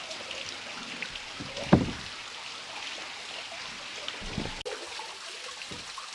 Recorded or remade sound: recorded